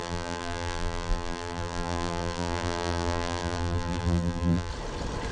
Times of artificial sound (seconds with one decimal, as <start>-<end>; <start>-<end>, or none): 0.0-4.7